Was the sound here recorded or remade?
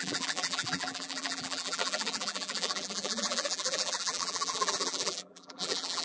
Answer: remade